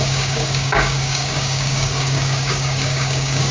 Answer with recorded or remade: remade